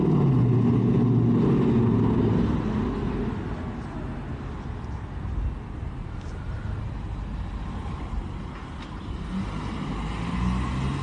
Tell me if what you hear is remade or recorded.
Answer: recorded